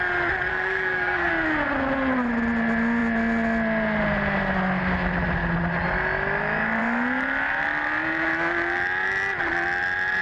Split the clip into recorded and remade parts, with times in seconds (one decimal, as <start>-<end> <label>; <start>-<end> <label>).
0.0-0.5 recorded; 0.5-1.3 remade; 1.3-10.2 recorded